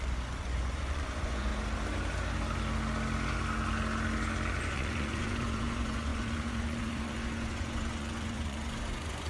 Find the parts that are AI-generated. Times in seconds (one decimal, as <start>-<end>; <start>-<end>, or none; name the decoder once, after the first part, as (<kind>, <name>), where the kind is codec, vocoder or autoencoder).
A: 0.0-1.5 (vocoder, Vocos); 4.6-9.3